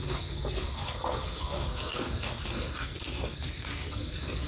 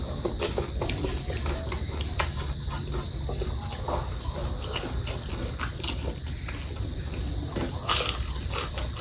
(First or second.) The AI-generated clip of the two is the first